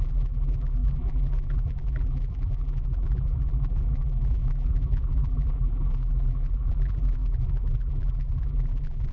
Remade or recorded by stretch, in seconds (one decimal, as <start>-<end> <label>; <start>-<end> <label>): 0.0-9.1 remade